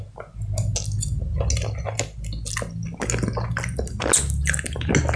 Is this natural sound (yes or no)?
yes